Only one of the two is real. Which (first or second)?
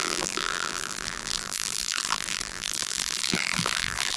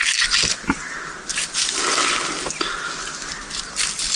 second